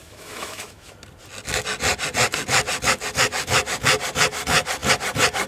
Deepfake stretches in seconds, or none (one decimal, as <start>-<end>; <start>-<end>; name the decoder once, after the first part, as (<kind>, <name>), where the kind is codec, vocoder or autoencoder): 0.0-0.9 (autoencoder, DAC-VAE)